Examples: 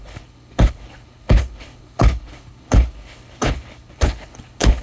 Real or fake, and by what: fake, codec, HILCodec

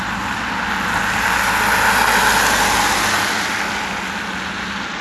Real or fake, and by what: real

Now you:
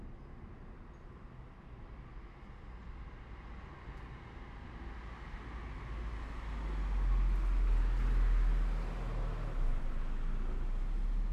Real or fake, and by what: real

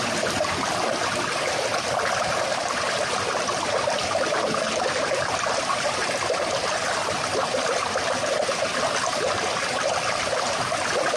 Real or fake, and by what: real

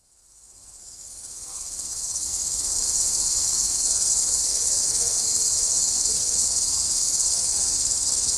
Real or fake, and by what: fake, codec, SNAC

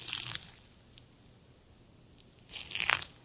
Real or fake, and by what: real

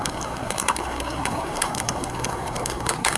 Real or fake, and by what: fake, codec, SNAC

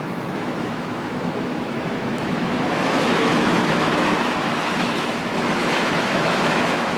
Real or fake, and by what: fake, autoencoder, DAC-VAE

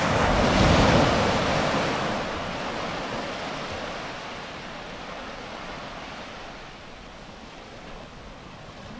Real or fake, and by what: real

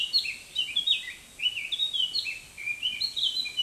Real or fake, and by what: real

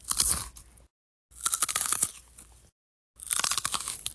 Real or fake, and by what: real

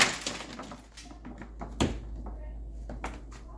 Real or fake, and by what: real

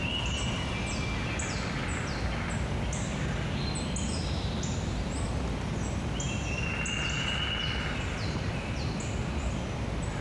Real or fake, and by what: real